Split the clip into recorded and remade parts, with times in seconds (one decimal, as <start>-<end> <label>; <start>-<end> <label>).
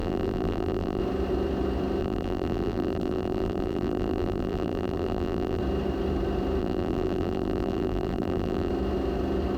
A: 0.0-1.0 remade; 1.0-2.0 recorded; 2.0-5.6 remade; 5.6-6.6 recorded; 6.6-8.7 remade; 8.7-9.6 recorded